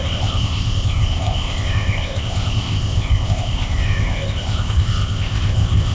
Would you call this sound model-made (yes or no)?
yes